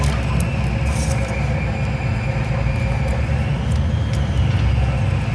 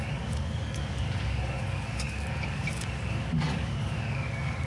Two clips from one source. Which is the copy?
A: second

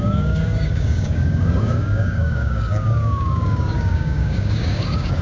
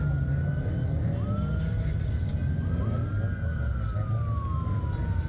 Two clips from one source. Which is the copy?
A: first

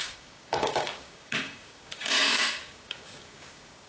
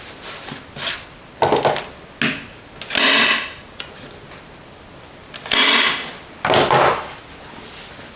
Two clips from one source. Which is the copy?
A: first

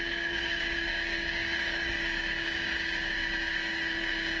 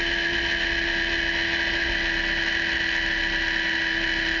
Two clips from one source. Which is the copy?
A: first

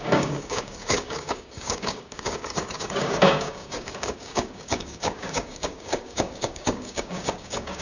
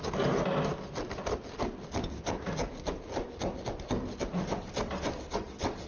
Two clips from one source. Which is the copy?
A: first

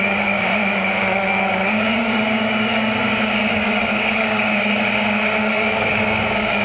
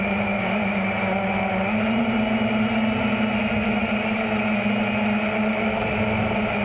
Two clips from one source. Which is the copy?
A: first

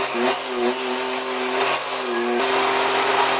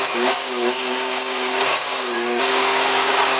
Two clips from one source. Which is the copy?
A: second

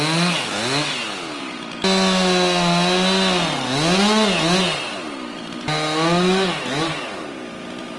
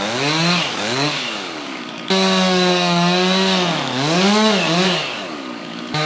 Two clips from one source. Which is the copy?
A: second